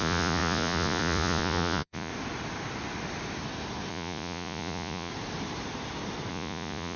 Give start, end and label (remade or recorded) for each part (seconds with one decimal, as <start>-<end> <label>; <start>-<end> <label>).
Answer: 0.0-2.1 remade; 2.1-3.9 recorded; 3.9-5.1 remade; 5.1-6.3 recorded; 6.3-7.0 remade